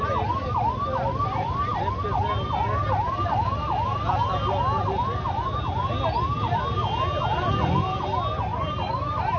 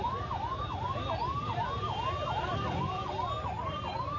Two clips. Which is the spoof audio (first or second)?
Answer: second